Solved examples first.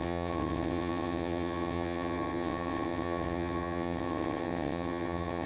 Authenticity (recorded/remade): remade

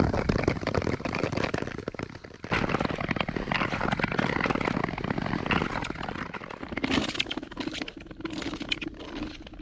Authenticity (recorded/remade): recorded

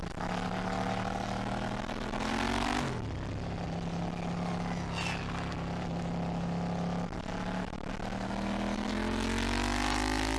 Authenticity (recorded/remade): recorded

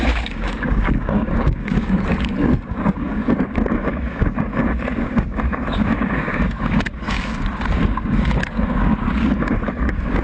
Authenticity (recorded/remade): remade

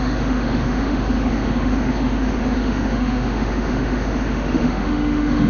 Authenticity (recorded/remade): remade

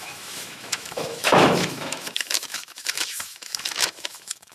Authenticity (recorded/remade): remade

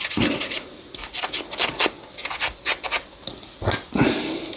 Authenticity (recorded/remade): recorded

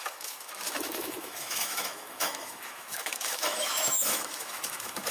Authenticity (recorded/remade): remade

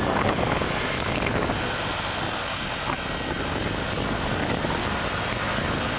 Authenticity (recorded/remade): recorded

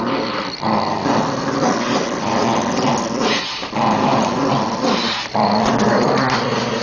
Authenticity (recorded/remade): recorded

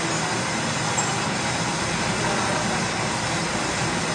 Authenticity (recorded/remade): recorded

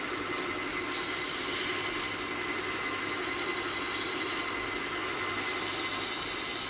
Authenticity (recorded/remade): recorded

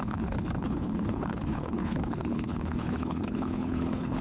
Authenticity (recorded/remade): remade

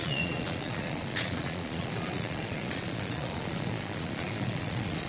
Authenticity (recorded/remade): remade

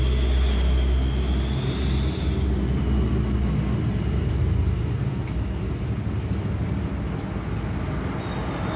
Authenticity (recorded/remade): recorded